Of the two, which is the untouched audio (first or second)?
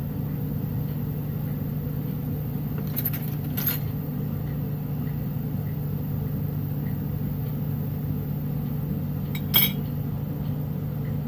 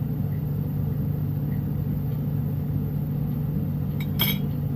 first